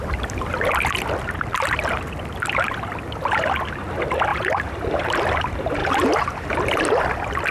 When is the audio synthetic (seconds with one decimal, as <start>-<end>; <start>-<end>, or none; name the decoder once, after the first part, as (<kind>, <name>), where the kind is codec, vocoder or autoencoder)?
4.3-5.2 (vocoder, BigVGAN v2); 5.8-6.8